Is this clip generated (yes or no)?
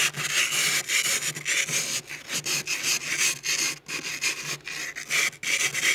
no